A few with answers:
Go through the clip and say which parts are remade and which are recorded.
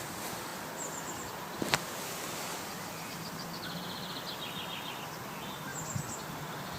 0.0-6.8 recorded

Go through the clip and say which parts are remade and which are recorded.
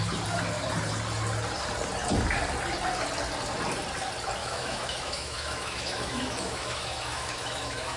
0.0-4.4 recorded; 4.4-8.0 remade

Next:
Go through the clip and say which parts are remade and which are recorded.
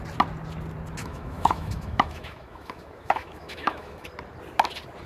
0.0-1.0 recorded; 1.0-4.1 remade; 4.1-5.1 recorded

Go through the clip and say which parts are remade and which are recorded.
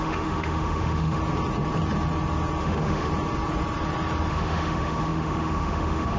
0.0-1.2 remade; 1.2-2.6 recorded; 2.6-3.1 remade; 3.1-4.3 recorded; 4.3-6.2 remade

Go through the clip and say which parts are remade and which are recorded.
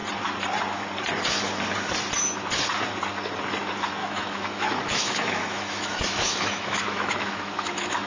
0.0-4.0 recorded; 4.0-8.1 remade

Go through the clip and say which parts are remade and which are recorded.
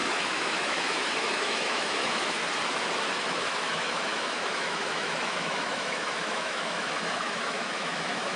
0.0-2.4 remade; 2.4-3.2 recorded; 3.2-8.4 remade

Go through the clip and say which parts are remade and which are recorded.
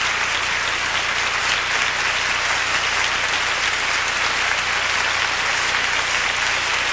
0.0-6.9 recorded